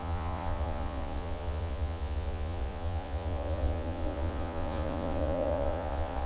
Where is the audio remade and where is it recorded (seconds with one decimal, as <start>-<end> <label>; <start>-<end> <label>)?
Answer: 0.0-6.3 remade